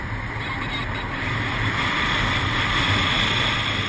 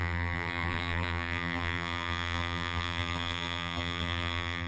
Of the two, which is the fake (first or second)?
second